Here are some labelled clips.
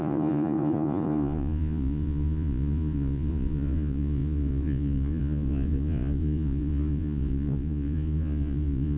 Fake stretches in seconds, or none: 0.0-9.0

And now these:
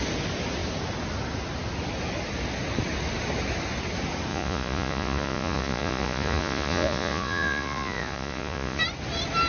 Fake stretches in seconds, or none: 4.3-8.8

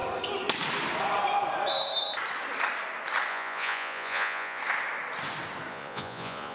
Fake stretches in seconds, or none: 3.3-4.6; 5.7-6.5

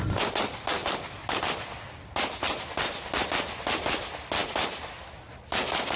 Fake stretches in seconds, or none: none

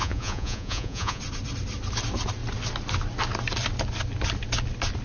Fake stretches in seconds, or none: 0.0-1.2

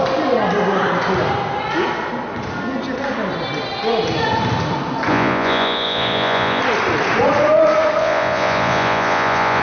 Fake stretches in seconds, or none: 5.1-6.6; 8.0-9.6